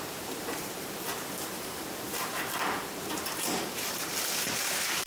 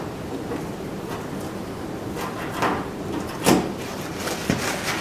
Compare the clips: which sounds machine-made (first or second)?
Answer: first